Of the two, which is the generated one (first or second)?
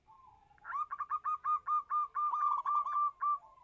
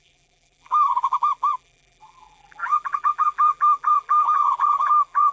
second